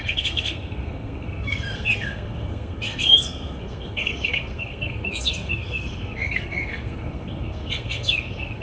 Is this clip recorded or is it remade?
remade